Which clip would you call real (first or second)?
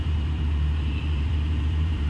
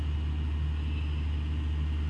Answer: second